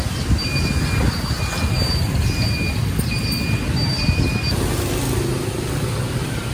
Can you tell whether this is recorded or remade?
recorded